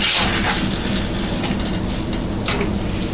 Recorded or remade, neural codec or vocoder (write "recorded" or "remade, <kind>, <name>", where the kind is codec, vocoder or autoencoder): recorded